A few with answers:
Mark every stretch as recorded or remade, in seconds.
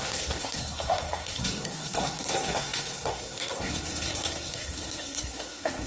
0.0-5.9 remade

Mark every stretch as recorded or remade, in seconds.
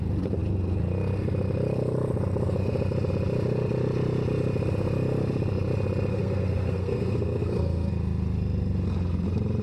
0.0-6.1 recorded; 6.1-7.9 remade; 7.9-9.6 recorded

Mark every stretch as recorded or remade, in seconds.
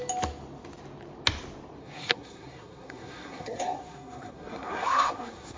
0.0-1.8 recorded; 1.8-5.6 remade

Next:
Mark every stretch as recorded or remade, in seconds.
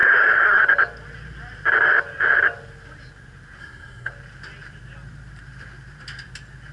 0.0-0.6 remade; 0.6-3.6 recorded; 3.6-4.1 remade; 4.1-6.7 recorded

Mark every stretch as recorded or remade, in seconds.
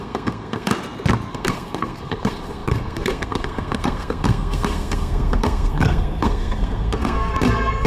0.0-0.7 remade; 0.7-1.3 recorded; 1.3-7.9 remade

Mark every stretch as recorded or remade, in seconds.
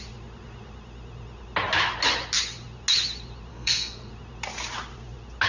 0.0-3.5 recorded; 3.5-4.1 remade; 4.1-5.5 recorded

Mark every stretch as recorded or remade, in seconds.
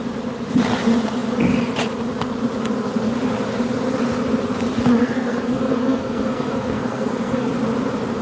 0.0-5.0 recorded; 5.0-7.5 remade; 7.5-8.2 recorded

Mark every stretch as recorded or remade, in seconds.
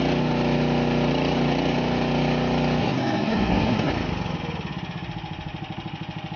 0.0-2.8 recorded; 2.8-3.9 remade; 3.9-6.4 recorded